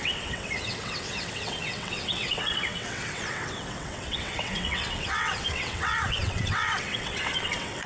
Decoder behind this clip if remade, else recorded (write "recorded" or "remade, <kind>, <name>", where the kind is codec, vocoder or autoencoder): remade, vocoder, WaveNeXt